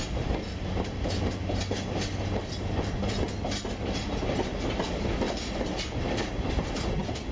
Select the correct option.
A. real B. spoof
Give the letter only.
A